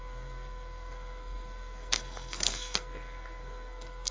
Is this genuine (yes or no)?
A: no